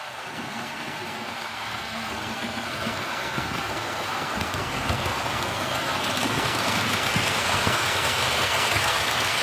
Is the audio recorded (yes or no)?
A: no